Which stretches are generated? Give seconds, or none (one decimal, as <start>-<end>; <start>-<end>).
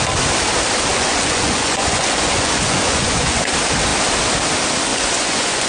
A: 0.9-3.5; 4.9-5.7